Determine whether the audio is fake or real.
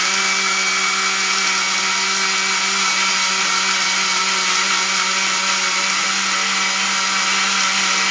real